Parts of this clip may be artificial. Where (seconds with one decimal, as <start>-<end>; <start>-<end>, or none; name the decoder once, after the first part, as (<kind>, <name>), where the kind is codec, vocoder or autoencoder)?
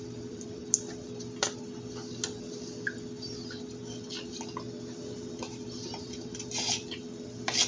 0.0-0.6 (vocoder, BigVGAN v2); 5.2-7.7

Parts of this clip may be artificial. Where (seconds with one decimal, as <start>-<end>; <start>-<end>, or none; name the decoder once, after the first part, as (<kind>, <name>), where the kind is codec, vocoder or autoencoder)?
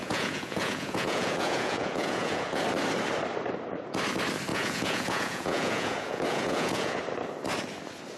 0.0-2.6 (vocoder, Vocos); 4.5-7.0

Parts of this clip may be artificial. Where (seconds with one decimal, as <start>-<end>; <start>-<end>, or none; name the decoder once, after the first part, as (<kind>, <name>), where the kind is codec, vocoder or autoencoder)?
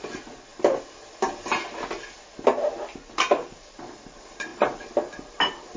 none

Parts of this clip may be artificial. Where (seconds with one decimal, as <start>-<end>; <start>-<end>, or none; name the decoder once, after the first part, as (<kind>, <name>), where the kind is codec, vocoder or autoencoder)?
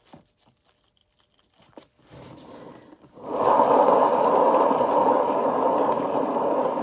none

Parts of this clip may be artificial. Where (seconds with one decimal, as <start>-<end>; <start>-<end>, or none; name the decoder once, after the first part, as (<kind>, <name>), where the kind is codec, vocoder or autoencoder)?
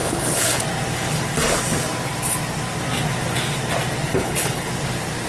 0.0-0.6 (codec, HILCodec); 4.1-4.7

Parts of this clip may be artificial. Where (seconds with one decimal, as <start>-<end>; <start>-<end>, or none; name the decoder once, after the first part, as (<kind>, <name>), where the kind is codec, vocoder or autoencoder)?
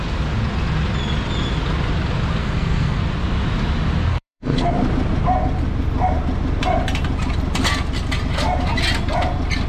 2.4-3.0 (codec, SNAC); 4.1-4.7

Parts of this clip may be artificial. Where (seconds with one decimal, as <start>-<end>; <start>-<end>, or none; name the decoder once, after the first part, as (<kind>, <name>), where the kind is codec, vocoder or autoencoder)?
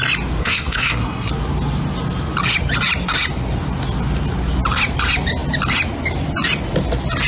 0.4-1.3 (codec, SNAC)